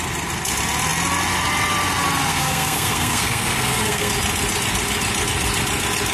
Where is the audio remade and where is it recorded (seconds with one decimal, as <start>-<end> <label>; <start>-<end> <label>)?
0.0-2.3 recorded; 2.3-4.1 remade; 4.1-6.1 recorded